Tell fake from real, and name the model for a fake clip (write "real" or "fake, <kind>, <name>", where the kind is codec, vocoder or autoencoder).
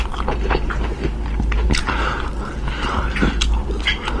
real